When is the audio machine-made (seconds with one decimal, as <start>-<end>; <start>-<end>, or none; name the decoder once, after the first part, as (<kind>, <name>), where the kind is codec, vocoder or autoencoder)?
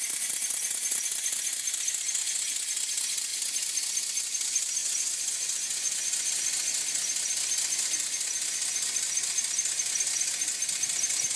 4.8-6.3 (vocoder, Vocos)